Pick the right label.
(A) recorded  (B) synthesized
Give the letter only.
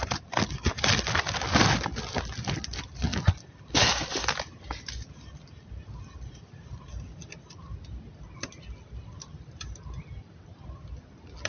A